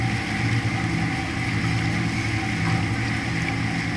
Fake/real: real